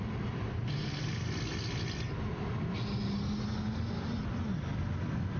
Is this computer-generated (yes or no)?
no